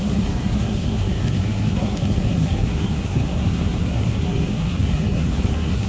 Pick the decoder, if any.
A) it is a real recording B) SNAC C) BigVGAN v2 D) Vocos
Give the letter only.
B